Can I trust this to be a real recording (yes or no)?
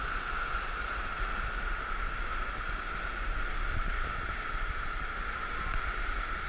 yes